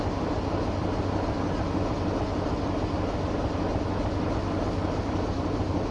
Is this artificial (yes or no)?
no